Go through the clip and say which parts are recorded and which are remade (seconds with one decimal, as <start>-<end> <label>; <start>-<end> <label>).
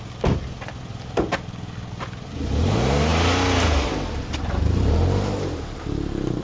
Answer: 0.0-6.4 recorded